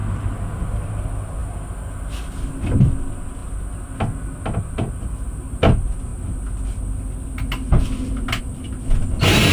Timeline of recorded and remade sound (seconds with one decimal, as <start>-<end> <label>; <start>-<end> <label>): 0.0-9.5 recorded